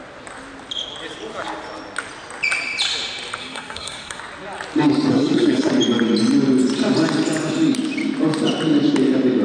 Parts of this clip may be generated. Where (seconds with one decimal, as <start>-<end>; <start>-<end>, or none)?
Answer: 3.4-4.2; 5.1-5.7